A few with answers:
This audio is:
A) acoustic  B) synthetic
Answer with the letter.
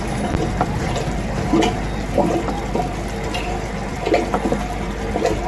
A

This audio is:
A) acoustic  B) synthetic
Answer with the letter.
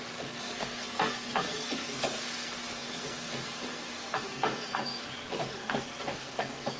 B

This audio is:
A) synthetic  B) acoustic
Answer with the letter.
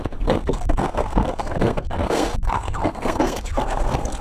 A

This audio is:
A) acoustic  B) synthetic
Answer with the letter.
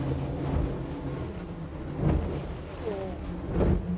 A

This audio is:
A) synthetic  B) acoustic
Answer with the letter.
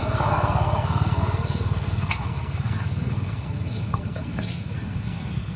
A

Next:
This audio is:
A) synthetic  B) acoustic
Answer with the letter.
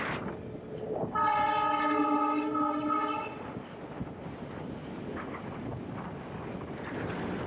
B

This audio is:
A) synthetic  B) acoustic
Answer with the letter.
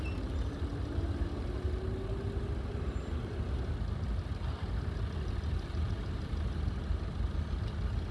B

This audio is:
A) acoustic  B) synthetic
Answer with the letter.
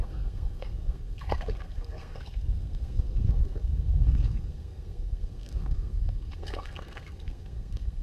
B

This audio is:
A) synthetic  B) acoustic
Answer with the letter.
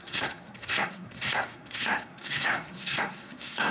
A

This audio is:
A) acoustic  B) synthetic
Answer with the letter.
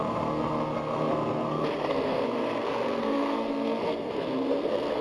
B